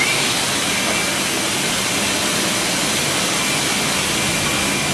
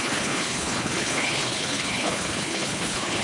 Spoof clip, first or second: second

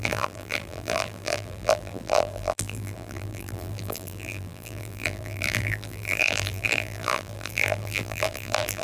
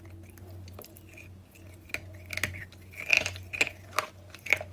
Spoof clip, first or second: first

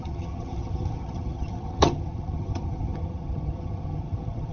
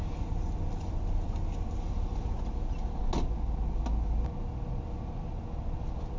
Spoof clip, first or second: first